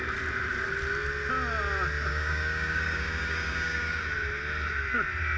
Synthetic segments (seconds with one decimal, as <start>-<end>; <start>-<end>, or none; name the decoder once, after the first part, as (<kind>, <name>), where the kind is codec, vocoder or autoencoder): 2.1-4.1 (codec, DAC)

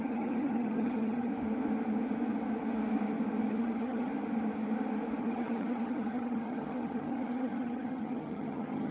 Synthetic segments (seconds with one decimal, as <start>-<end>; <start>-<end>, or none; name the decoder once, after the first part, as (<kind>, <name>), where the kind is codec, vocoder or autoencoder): 0.0-1.3 (vocoder, HiFi-GAN); 3.5-4.1; 5.2-8.9

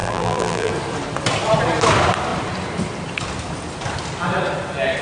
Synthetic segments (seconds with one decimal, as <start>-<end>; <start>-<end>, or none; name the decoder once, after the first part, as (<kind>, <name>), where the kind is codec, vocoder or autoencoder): 0.0-0.7 (vocoder, BigVGAN v2)

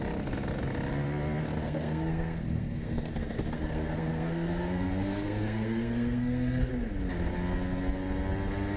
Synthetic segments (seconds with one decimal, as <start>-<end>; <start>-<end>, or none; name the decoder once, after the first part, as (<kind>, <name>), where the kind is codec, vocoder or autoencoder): 1.6-6.7 (codec, SNAC)

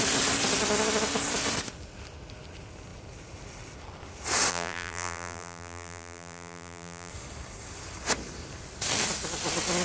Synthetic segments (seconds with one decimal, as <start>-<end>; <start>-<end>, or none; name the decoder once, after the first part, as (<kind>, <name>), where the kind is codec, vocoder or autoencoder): 4.5-7.1 (vocoder, BigVGAN v2)

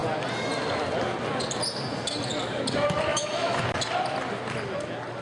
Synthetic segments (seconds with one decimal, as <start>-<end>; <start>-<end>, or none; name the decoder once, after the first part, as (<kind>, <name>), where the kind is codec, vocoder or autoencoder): 3.1-3.6 (autoencoder, DAC-VAE)

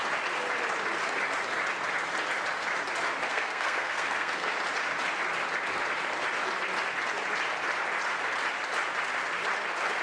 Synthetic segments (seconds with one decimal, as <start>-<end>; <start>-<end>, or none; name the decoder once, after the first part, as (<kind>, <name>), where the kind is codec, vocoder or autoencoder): 3.3-4.5 (codec, SNAC)